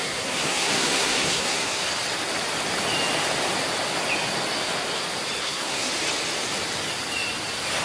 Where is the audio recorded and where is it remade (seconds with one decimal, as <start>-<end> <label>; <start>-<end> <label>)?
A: 0.0-1.8 remade; 1.8-5.4 recorded; 5.4-5.9 remade; 5.9-7.8 recorded

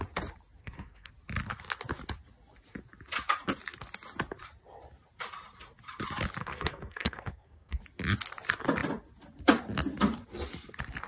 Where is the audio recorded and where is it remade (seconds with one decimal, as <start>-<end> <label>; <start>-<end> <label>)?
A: 0.0-0.6 recorded; 0.6-1.1 remade; 1.1-6.4 recorded; 6.4-7.8 remade; 7.8-11.1 recorded

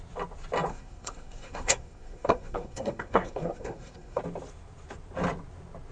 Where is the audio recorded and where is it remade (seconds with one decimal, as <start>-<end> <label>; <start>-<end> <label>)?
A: 0.0-0.7 recorded; 0.7-4.2 remade; 4.2-5.9 recorded

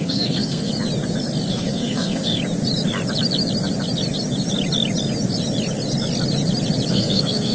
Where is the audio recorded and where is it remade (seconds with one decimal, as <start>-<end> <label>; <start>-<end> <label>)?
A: 0.0-0.7 remade; 0.7-1.5 recorded; 1.5-2.4 remade; 2.4-6.9 recorded; 6.9-7.5 remade

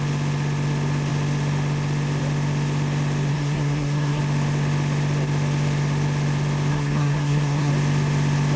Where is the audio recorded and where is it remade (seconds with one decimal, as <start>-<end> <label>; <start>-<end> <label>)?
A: 0.0-3.3 recorded; 3.3-4.2 remade; 4.2-6.7 recorded; 6.7-7.7 remade; 7.7-8.6 recorded